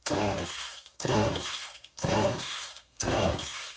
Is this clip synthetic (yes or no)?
yes